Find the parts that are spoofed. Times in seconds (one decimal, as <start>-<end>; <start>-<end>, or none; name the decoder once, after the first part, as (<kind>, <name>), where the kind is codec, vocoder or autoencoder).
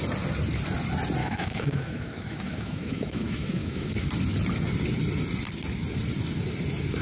1.2-3.9 (autoencoder, DAC-VAE)